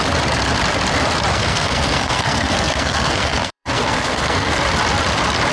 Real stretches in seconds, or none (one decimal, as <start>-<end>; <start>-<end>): 0.0-1.3; 4.6-5.5